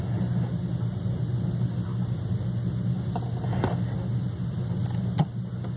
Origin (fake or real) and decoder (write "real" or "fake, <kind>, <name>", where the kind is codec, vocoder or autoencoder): real